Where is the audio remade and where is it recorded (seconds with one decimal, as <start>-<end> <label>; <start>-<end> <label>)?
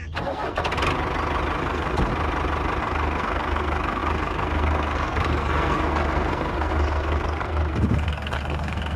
0.0-0.7 remade; 0.7-1.6 recorded; 1.6-2.1 remade; 2.1-2.8 recorded; 2.8-9.0 remade